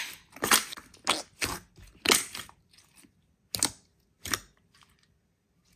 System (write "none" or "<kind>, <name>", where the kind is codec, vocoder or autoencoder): none